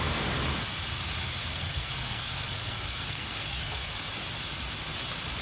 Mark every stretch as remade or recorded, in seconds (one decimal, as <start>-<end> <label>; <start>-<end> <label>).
0.0-1.4 recorded; 1.4-4.0 remade; 4.0-5.4 recorded